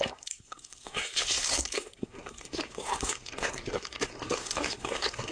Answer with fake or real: fake